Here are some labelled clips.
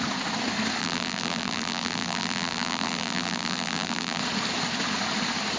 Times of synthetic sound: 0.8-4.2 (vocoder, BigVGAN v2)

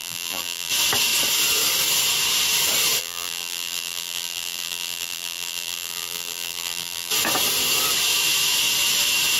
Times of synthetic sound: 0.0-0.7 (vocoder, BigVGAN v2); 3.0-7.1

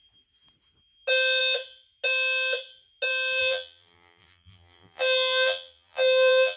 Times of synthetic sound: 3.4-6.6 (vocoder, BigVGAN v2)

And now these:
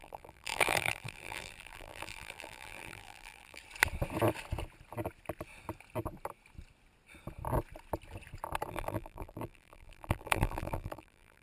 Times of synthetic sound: 0.0-3.6 (vocoder, BigVGAN v2); 8.7-11.4

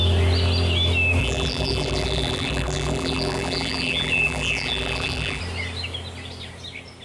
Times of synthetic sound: 1.2-5.4 (vocoder, BigVGAN v2)